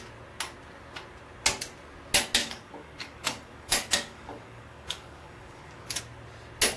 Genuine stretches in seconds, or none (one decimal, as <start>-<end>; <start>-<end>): 0.0-2.4; 6.0-6.8